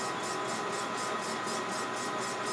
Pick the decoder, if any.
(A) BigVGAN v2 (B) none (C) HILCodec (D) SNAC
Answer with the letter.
B